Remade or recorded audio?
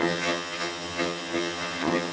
remade